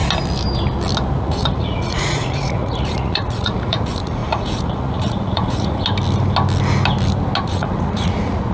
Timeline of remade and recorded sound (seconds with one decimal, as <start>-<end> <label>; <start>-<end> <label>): 0.0-1.2 recorded; 1.2-5.8 remade; 5.8-7.4 recorded; 7.4-8.5 remade